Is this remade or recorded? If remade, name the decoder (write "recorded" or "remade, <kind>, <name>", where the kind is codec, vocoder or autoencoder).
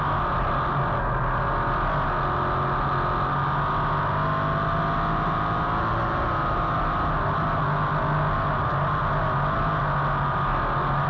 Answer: recorded